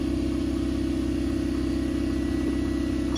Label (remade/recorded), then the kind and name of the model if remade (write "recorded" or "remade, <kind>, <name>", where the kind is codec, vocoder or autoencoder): recorded